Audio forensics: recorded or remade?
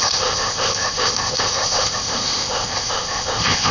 remade